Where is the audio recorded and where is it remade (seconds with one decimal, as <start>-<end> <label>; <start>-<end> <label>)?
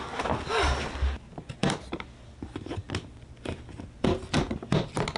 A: 0.0-5.2 recorded